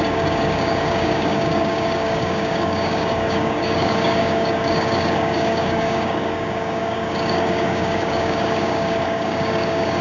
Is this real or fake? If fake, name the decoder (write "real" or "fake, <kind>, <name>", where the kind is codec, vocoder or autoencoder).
fake, codec, DAC